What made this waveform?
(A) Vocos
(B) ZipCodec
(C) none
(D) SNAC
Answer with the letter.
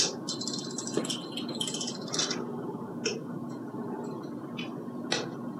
C